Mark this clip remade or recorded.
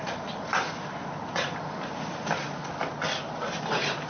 recorded